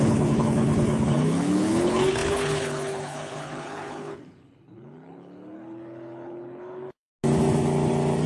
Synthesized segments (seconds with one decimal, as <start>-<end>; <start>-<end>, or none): 0.0-7.1